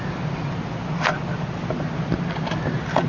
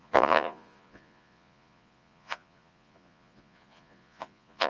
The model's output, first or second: second